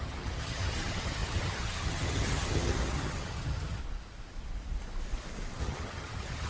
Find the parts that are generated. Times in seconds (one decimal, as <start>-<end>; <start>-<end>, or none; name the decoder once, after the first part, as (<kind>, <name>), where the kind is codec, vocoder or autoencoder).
0.0-3.8 (vocoder, HiFi-GAN); 5.6-6.5